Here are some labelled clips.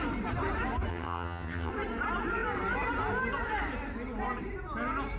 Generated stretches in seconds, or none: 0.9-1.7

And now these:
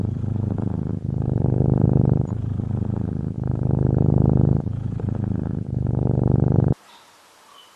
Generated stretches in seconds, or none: 0.0-7.8

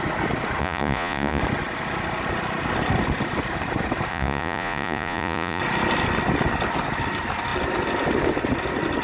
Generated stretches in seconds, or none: 0.6-1.4; 4.1-5.6

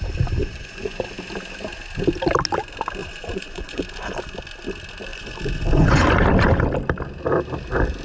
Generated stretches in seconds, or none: 0.4-1.1; 3.0-3.8; 5.1-6.2

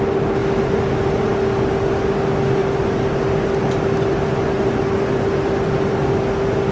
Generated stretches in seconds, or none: none

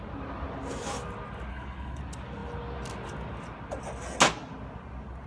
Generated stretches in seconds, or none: 1.5-2.0

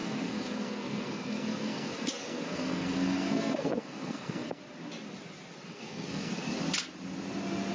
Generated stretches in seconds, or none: 0.0-4.6; 5.7-6.3

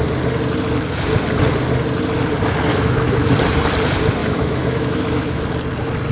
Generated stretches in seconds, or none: 2.7-3.3; 4.2-5.4